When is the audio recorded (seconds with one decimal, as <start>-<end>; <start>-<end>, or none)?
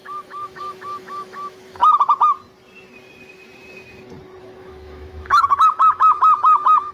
1.8-4.4